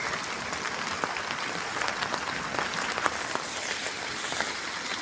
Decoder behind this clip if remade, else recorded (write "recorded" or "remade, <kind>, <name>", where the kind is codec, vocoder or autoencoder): remade, vocoder, BigVGAN v2